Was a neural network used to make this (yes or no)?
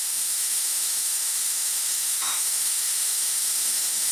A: yes